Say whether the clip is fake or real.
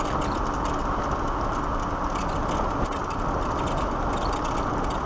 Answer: real